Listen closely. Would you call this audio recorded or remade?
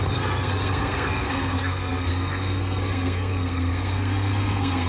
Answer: remade